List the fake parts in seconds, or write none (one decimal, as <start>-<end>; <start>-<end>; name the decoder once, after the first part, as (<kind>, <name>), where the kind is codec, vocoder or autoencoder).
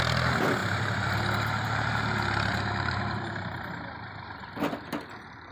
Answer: 0.6-1.2 (vocoder, BigVGAN v2); 2.5-3.7